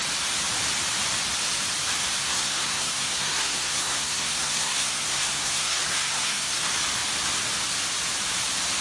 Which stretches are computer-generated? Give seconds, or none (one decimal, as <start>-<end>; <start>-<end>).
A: 2.2-6.6